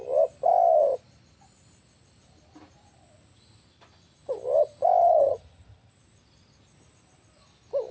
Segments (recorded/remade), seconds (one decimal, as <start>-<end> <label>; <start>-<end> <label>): 0.0-5.0 recorded; 5.0-5.9 remade; 5.9-7.9 recorded